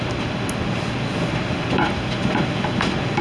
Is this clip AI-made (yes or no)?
no